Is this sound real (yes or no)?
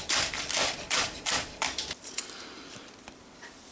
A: no